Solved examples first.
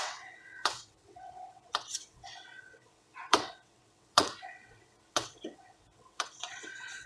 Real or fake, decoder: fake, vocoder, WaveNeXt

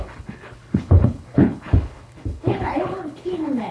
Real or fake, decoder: fake, codec, HILCodec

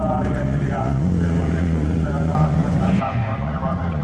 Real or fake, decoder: fake, vocoder, Vocos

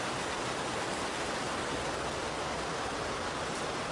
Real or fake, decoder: real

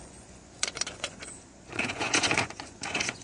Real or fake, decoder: fake, vocoder, Vocos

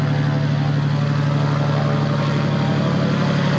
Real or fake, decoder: real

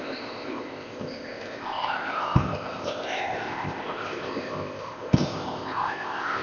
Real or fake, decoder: fake, codec, ZipCodec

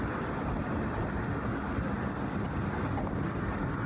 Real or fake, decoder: real